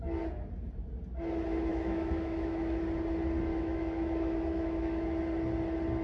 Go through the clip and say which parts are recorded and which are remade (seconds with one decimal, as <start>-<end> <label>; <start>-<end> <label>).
0.0-1.7 recorded; 1.7-2.8 remade; 2.8-3.5 recorded; 3.5-5.2 remade; 5.2-6.0 recorded